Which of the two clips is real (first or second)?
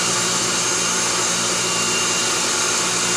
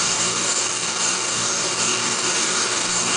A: first